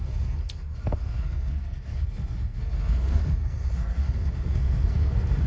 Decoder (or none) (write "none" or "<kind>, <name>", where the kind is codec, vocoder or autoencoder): codec, SNAC